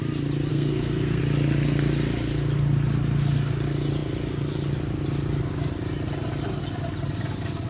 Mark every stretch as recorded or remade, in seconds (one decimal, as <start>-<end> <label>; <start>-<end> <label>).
0.0-0.5 recorded; 0.5-1.2 remade; 1.2-7.7 recorded